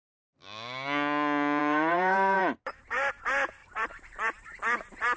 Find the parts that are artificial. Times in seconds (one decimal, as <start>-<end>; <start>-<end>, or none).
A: 1.6-3.1; 3.6-4.4